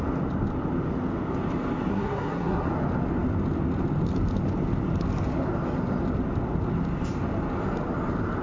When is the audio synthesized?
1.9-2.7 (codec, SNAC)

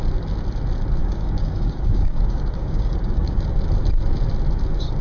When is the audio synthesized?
1.0-3.4 (codec, DAC)

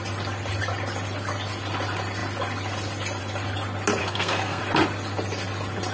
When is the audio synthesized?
4.0-4.6 (codec, SNAC)

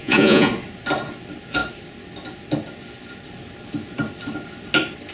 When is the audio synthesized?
0.0-0.5 (vocoder, Vocos)

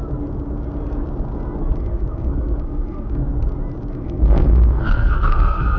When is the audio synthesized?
1.8-3.2 (codec, SNAC); 3.9-5.8